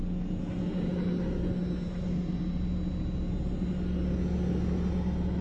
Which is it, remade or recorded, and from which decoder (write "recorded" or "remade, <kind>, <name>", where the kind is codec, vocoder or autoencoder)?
recorded